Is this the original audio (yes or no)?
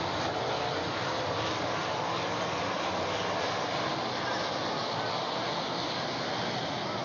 yes